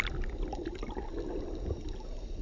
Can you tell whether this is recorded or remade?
recorded